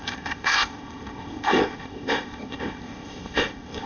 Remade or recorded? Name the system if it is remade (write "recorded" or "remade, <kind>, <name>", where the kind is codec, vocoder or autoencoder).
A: remade, codec, ZipCodec